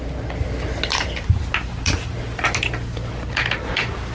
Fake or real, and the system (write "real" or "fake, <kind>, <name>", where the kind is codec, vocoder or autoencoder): real